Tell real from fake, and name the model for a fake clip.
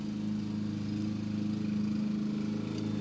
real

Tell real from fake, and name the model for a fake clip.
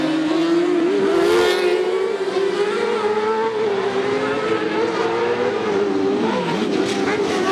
real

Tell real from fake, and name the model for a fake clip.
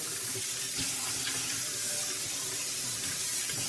fake, vocoder, BigVGAN v2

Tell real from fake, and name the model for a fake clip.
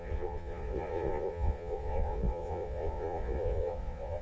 fake, vocoder, Vocos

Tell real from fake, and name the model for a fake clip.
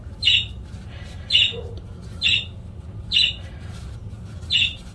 real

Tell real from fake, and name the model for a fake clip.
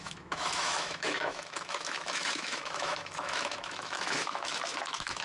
fake, autoencoder, DAC-VAE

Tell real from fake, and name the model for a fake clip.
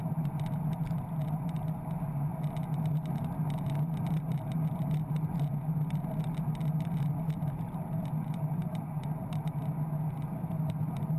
real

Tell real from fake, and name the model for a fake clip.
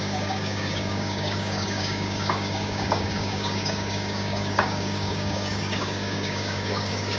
fake, codec, DAC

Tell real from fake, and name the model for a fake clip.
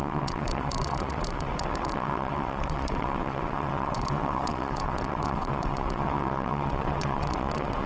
fake, vocoder, WaveNeXt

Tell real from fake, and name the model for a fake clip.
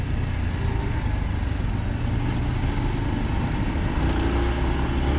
real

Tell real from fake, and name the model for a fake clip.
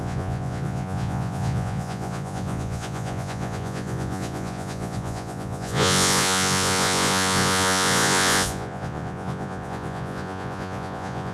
fake, vocoder, Vocos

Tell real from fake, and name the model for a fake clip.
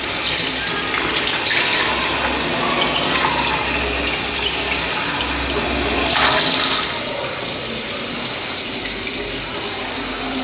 real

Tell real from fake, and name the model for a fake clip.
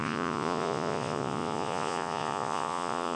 fake, vocoder, Vocos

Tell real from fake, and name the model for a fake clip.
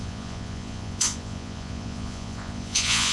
fake, vocoder, Vocos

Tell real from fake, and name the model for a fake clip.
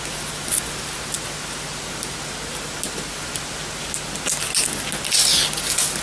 real